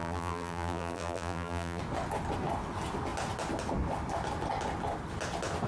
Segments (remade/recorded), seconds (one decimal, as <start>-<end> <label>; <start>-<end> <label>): 0.0-1.8 remade; 1.8-5.7 recorded